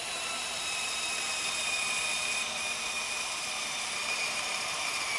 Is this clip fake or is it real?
fake